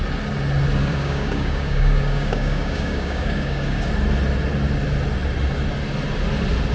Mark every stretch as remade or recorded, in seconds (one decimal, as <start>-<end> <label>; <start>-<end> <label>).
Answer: 0.0-0.8 recorded; 0.8-3.9 remade; 3.9-6.7 recorded